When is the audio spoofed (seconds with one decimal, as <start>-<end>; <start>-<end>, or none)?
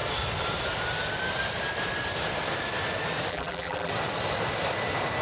3.3-3.9